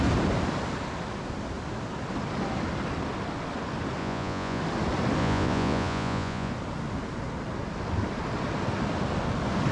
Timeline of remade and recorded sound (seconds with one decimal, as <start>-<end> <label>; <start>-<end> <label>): 0.0-4.0 recorded; 4.0-4.6 remade; 4.6-5.2 recorded; 5.2-6.5 remade; 6.5-9.7 recorded